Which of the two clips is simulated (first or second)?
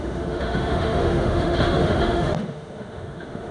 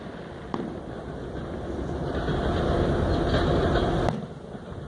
first